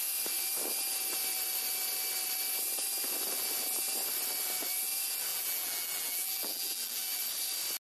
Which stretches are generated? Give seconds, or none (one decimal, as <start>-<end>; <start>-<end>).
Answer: 5.3-7.2